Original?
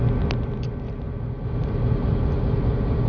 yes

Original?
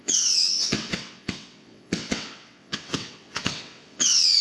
no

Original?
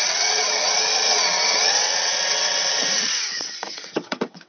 no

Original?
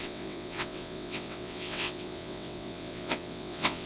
no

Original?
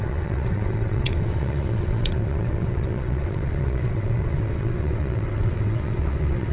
no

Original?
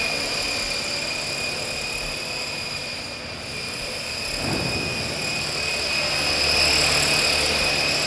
yes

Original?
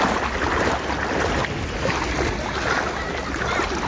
yes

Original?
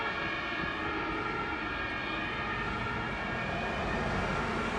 yes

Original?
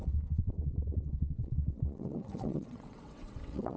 no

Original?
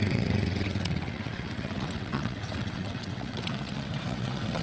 no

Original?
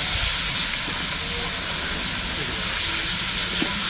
yes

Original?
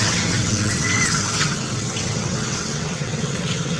no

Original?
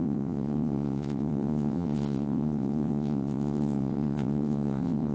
no